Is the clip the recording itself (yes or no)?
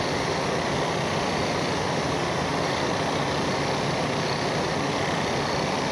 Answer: yes